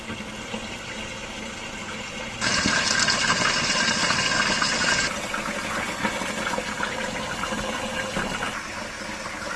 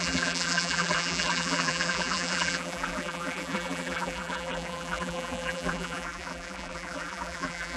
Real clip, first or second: first